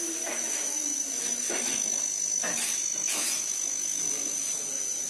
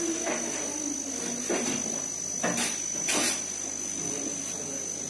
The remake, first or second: first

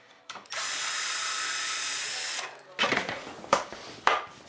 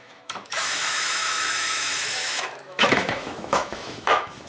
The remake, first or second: second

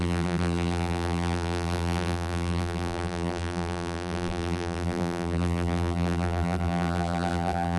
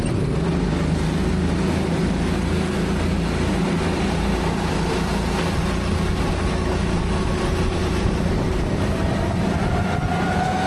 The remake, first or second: first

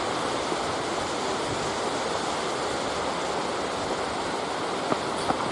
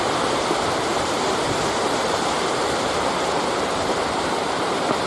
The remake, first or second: second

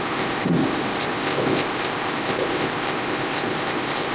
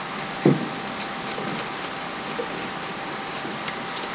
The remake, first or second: first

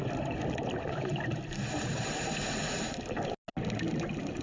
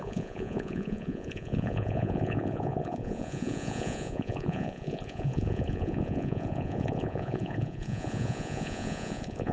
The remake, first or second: second